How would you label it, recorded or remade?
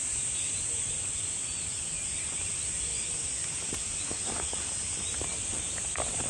recorded